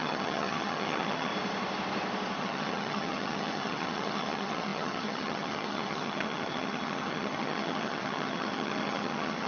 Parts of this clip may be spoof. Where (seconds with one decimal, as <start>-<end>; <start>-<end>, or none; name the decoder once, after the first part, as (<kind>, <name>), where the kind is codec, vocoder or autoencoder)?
0.0-1.3 (vocoder, HiFi-GAN); 2.4-9.5